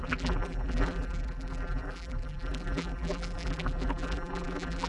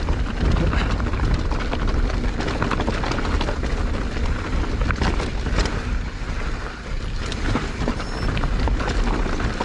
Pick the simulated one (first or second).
first